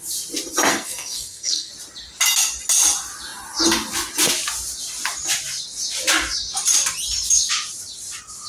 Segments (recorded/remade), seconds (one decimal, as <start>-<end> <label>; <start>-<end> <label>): 0.0-0.7 recorded; 0.7-1.7 remade; 1.7-8.5 recorded

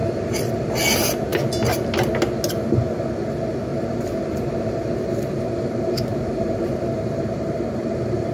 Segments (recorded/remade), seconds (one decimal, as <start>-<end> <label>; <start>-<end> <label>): 0.0-0.7 remade; 0.7-3.7 recorded; 3.7-8.3 remade

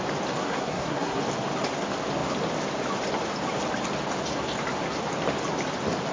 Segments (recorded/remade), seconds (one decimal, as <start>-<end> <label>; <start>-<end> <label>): 0.0-0.4 recorded; 0.4-1.2 remade; 1.2-6.1 recorded

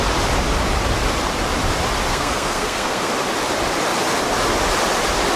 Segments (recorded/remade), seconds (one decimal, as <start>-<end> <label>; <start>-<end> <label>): 0.0-2.1 recorded; 2.1-3.1 remade; 3.1-5.4 recorded

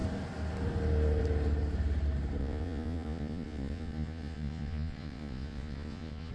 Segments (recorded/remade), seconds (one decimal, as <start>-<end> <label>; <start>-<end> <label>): 0.0-2.4 recorded; 2.4-6.3 remade

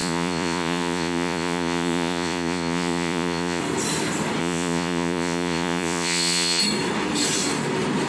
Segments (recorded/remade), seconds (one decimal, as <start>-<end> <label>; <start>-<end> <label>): 0.0-3.6 remade; 3.6-4.4 recorded; 4.4-6.6 remade; 6.6-8.1 recorded

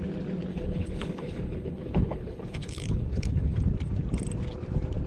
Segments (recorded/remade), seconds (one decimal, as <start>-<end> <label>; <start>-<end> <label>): 0.0-0.5 recorded; 0.5-3.6 remade; 3.6-5.1 recorded

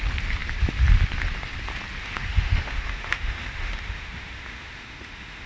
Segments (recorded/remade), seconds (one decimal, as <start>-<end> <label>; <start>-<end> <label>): 0.0-2.0 recorded; 2.0-5.5 remade